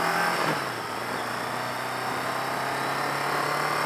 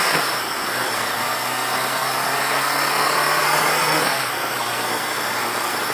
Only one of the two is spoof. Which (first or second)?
second